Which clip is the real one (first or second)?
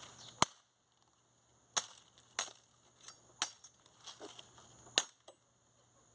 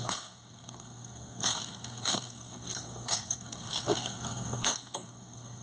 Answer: first